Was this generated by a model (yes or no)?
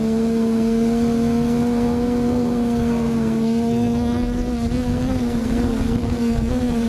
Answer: yes